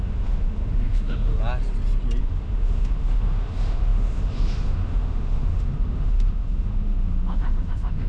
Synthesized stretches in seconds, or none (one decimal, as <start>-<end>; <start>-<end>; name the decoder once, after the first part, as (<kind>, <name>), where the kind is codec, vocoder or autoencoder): 0.0-1.3 (autoencoder, DAC-VAE); 2.2-8.1